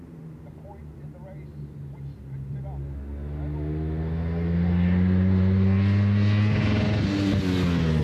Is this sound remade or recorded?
recorded